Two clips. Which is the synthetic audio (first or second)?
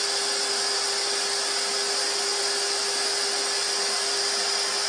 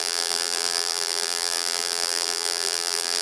second